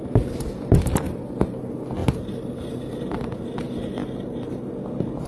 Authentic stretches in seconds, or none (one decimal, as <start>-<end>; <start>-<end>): 0.0-0.9; 1.6-2.0; 3.5-4.0; 4.6-5.3